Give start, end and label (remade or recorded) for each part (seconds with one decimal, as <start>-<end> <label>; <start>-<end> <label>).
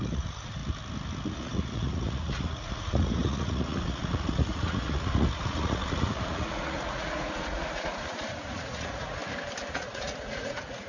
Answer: 0.0-0.6 remade; 0.6-1.3 recorded; 1.3-9.2 remade; 9.2-9.7 recorded; 9.7-10.9 remade